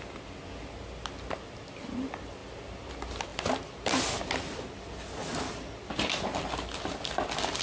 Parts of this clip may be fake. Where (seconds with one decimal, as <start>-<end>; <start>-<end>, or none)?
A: none